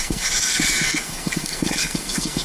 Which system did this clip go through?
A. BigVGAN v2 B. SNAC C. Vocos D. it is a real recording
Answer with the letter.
B